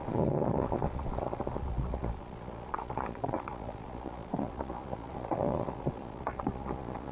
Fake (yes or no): yes